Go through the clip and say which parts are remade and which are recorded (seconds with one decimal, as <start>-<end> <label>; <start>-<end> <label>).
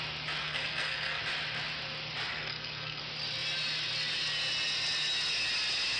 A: 0.0-0.4 recorded; 0.4-1.2 remade; 1.2-2.3 recorded; 2.3-3.0 remade; 3.0-6.0 recorded